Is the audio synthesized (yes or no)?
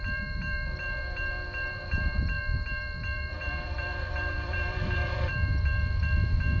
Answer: yes